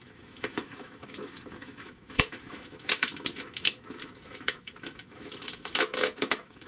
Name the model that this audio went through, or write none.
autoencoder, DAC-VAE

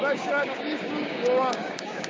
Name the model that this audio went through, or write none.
codec, DAC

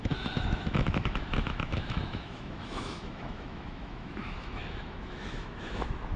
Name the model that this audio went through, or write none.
autoencoder, DAC-VAE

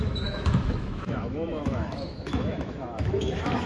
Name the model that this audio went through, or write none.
autoencoder, DAC-VAE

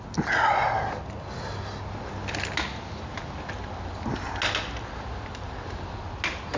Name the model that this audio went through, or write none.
none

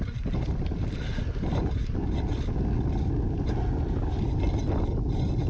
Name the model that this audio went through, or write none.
none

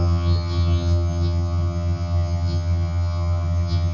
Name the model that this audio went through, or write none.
vocoder, HiFi-GAN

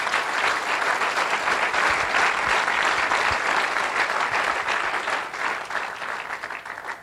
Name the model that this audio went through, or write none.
none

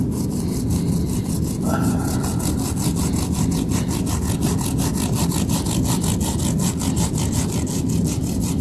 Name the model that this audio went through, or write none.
vocoder, BigVGAN v2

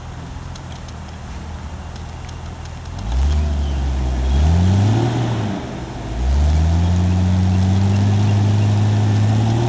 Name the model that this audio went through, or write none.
none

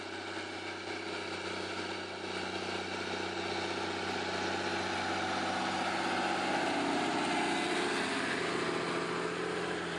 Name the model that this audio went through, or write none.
none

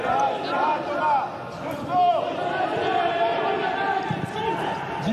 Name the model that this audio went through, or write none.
none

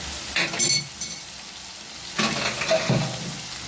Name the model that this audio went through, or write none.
none